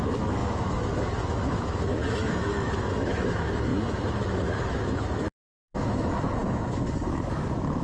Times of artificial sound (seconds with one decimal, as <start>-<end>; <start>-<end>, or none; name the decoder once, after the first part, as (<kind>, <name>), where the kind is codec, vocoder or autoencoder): 0.0-7.8 (autoencoder, DAC-VAE)